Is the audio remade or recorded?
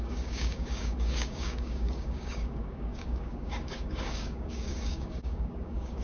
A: remade